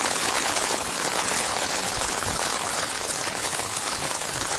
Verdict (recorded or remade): remade